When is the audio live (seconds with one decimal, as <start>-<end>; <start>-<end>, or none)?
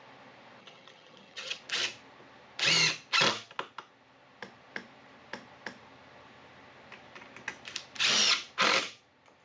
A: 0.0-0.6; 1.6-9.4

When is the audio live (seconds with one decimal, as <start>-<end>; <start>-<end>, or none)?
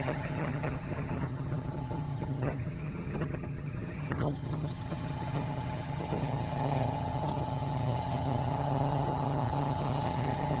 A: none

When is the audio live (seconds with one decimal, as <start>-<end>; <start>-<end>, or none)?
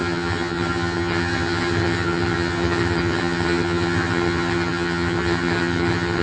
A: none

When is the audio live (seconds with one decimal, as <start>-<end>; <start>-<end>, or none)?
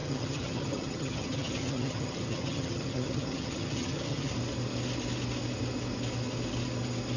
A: 4.3-7.2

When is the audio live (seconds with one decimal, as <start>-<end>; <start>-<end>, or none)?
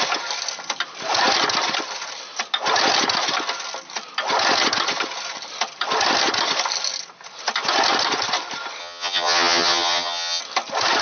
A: 0.0-8.8; 10.4-11.0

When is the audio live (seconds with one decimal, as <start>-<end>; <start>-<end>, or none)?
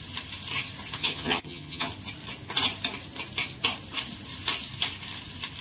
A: 0.0-1.0; 1.9-5.6